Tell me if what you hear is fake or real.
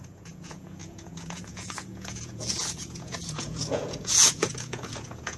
fake